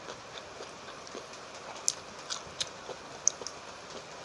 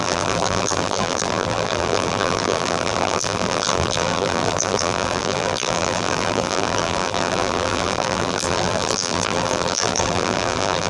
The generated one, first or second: second